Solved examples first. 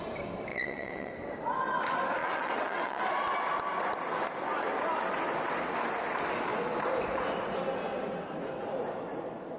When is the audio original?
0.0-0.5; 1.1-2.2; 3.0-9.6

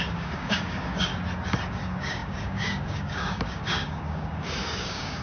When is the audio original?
1.1-1.6

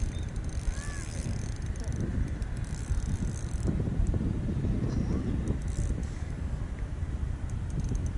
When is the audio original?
0.0-6.0; 6.6-8.2

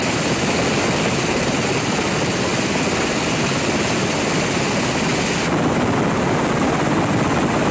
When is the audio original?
0.0-7.7

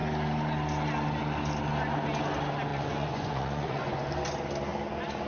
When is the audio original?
0.0-2.7; 4.0-5.3

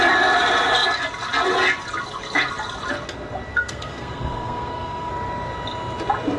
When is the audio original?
0.0-3.5; 5.1-6.4